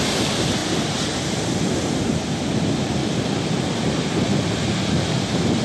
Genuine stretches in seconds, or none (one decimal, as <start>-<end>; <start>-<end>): 0.0-5.6